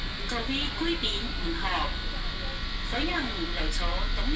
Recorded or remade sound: recorded